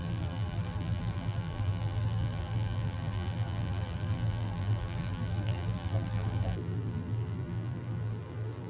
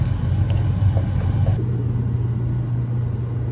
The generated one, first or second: first